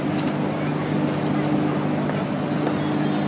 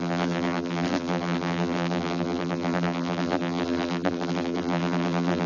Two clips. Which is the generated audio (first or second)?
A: second